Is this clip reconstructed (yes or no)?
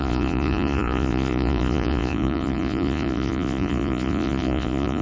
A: yes